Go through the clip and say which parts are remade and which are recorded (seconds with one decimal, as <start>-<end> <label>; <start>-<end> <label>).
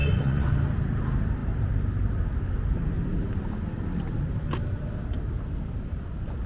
0.0-0.5 remade; 0.5-6.5 recorded